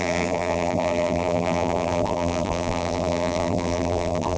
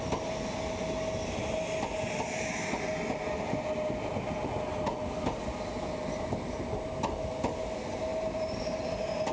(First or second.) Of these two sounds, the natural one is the second